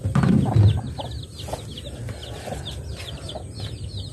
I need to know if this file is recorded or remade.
recorded